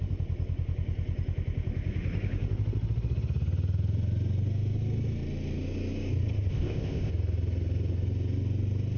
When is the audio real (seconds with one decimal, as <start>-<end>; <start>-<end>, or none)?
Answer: 0.0-6.5; 7.1-9.0